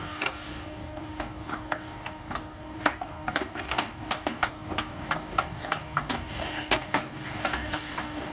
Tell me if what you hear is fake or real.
fake